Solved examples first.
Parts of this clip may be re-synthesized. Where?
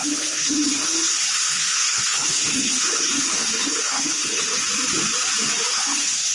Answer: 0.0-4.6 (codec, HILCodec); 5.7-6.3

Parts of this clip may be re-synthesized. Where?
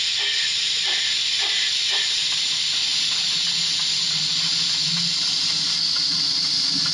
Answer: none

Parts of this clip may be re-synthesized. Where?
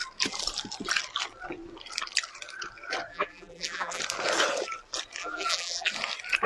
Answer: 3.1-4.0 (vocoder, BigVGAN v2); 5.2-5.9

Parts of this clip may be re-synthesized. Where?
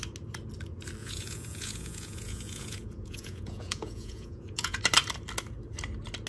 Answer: 1.0-4.8 (vocoder, Vocos)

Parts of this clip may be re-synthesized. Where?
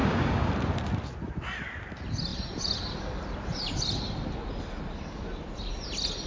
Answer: 0.0-0.5 (codec, DAC)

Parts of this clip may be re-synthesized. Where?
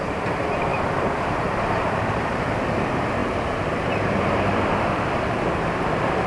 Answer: 0.0-6.3 (vocoder, BigVGAN v2)